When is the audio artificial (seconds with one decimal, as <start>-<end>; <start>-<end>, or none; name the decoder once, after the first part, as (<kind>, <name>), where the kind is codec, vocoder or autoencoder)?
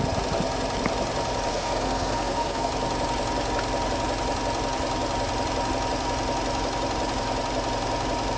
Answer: 1.5-2.7 (codec, SNAC)